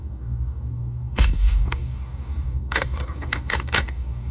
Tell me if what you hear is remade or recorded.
remade